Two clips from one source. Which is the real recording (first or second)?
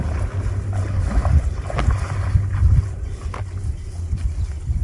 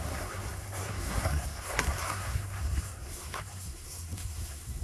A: first